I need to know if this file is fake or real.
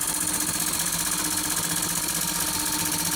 real